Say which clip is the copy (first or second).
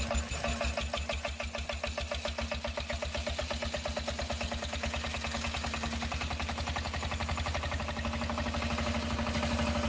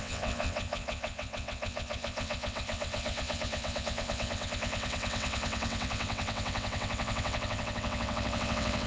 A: second